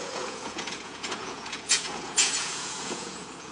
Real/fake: fake